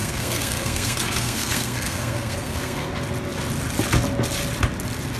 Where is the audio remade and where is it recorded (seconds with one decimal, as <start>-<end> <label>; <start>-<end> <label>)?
0.0-2.9 remade; 2.9-5.2 recorded